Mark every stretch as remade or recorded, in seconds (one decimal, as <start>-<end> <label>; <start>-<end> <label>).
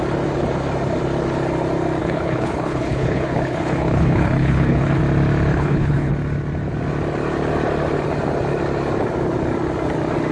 0.0-2.0 recorded; 2.0-5.0 remade; 5.0-5.5 recorded; 5.5-6.1 remade; 6.1-10.3 recorded